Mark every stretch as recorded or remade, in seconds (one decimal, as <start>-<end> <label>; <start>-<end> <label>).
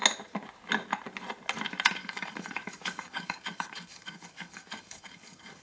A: 0.0-2.0 recorded; 2.0-5.6 remade